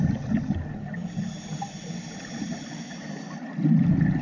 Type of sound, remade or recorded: recorded